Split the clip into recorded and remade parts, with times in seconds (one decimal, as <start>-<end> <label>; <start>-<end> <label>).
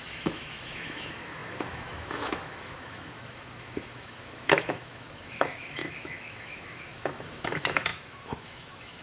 0.0-9.0 remade